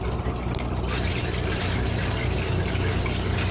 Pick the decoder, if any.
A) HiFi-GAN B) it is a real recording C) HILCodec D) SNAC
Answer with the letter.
B